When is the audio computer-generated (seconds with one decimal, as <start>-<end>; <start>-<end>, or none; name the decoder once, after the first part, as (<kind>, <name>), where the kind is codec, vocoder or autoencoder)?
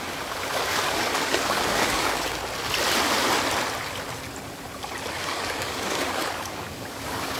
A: 0.0-2.4 (codec, DAC); 5.1-7.4